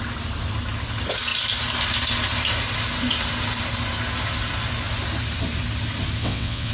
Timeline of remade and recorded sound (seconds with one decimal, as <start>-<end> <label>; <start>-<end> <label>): 0.0-6.2 recorded; 6.2-6.7 remade